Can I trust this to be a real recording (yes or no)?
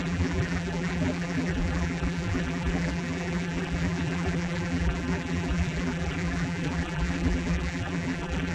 no